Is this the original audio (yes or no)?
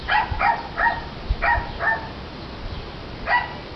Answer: yes